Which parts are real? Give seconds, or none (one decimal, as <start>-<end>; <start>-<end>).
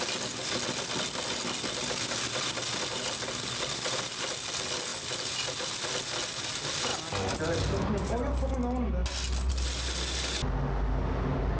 0.0-11.6